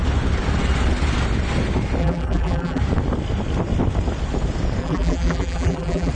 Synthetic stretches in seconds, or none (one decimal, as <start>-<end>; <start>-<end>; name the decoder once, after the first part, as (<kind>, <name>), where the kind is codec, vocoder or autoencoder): 2.0-2.8 (vocoder, BigVGAN v2); 4.8-6.1